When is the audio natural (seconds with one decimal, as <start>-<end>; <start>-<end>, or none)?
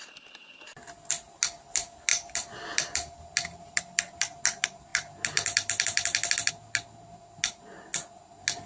0.0-8.7